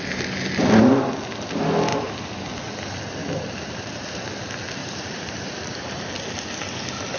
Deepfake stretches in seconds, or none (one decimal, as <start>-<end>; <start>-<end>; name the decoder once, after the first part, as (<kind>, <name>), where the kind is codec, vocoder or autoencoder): 1.9-2.4 (vocoder, BigVGAN v2); 3.2-4.3; 4.8-6.0